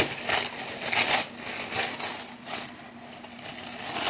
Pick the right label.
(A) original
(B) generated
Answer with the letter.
A